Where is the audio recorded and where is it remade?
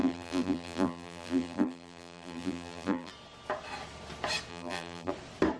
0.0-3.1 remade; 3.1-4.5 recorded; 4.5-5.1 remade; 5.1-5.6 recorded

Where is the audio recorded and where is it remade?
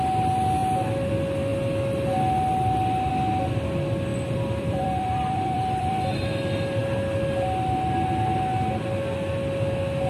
0.0-4.1 recorded; 4.1-6.0 remade; 6.0-10.1 recorded